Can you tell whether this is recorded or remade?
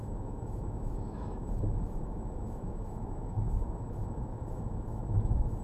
remade